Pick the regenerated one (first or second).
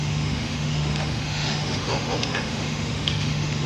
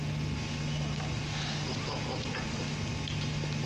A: first